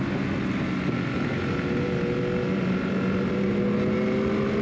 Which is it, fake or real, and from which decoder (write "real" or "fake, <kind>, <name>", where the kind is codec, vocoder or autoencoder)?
real